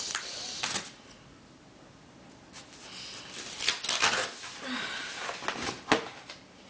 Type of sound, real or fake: real